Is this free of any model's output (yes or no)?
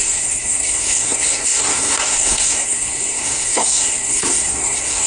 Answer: no